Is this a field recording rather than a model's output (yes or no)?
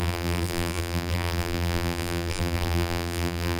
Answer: no